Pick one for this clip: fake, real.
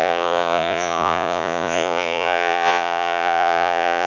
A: fake